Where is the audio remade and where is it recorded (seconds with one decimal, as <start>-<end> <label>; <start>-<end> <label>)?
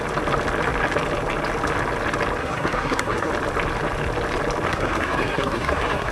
0.0-2.4 recorded; 2.4-3.3 remade; 3.3-4.7 recorded; 4.7-6.1 remade